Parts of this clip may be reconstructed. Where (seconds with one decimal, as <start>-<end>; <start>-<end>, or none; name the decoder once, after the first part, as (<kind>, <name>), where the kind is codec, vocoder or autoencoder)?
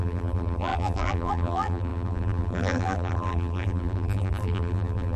0.0-5.2 (vocoder, BigVGAN v2)